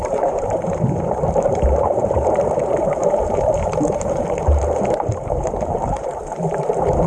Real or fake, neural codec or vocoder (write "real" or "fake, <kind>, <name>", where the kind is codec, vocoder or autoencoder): fake, vocoder, BigVGAN v2